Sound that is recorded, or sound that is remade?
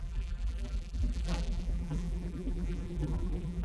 remade